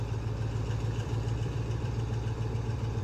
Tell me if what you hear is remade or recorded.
remade